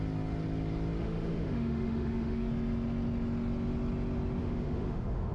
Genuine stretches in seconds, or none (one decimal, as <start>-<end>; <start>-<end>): 0.0-1.0; 2.5-4.4